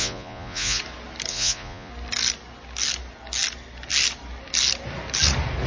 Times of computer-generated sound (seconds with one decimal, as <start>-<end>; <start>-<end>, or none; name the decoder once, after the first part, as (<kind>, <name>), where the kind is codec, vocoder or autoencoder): 0.0-0.8 (vocoder, Vocos); 1.3-1.9